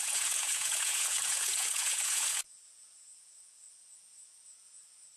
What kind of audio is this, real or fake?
fake